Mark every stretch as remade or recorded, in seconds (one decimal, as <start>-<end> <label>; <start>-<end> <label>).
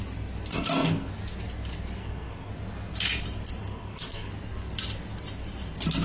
0.0-0.5 recorded; 0.5-1.1 remade; 1.1-2.0 recorded; 2.0-2.5 remade; 2.5-3.6 recorded; 3.6-4.3 remade; 4.3-6.0 recorded